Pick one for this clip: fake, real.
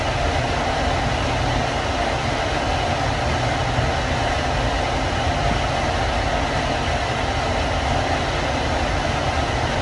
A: real